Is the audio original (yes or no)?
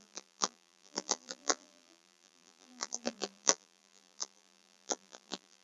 no